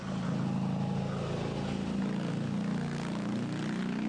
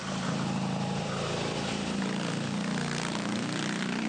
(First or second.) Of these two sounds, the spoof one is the second